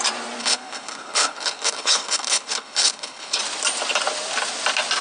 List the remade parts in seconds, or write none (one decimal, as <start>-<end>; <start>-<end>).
0.4-3.4